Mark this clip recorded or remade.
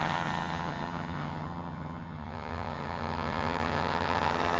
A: remade